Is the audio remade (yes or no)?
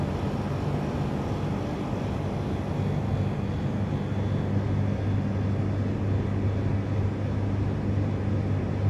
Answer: no